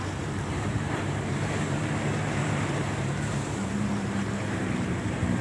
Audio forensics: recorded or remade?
remade